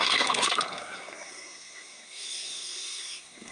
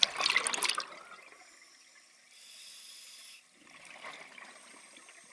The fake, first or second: first